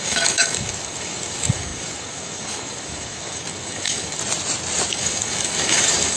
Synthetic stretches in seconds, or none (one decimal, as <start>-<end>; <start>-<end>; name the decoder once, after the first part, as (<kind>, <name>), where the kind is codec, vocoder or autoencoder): 0.0-4.2 (codec, DAC); 4.9-6.2